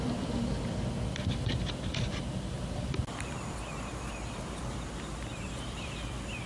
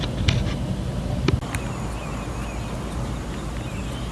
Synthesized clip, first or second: first